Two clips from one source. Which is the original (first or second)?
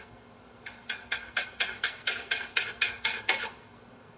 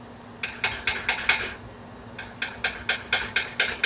second